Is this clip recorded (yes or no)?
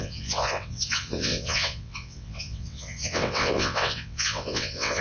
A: no